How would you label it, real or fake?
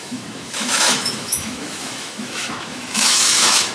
fake